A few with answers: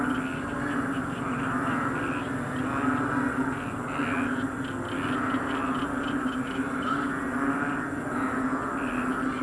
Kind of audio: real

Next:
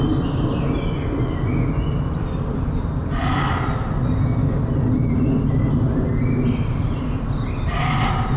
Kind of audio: real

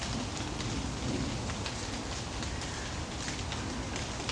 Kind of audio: real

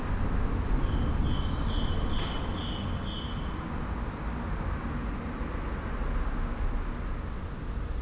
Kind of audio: real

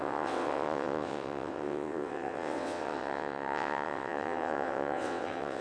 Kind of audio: fake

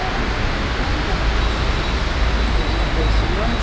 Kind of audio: real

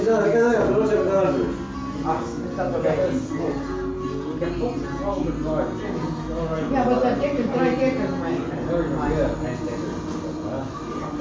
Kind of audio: real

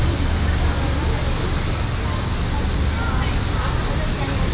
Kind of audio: real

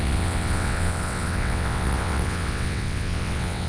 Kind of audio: fake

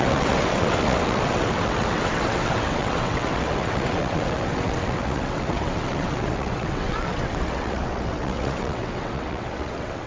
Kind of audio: fake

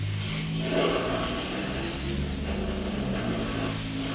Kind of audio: real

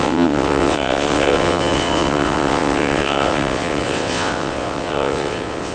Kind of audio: fake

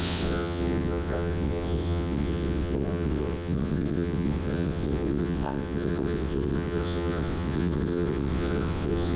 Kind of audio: fake